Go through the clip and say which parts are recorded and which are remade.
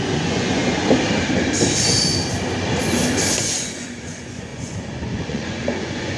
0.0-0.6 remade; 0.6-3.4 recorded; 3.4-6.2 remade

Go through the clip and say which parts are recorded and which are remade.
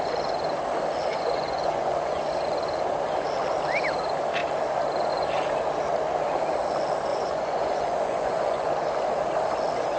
0.0-1.1 recorded; 1.1-2.2 remade; 2.2-7.1 recorded; 7.1-8.7 remade; 8.7-10.0 recorded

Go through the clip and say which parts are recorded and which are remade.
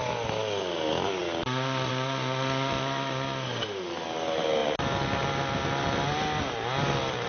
0.0-7.3 recorded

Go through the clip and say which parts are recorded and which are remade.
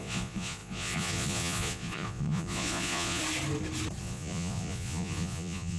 0.0-3.2 remade; 3.2-4.0 recorded; 4.0-5.8 remade